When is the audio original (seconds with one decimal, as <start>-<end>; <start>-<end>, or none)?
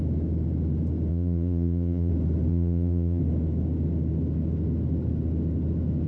0.0-1.1; 2.1-2.5; 3.2-6.1